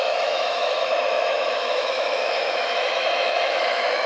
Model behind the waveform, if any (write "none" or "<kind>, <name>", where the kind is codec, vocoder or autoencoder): autoencoder, DAC-VAE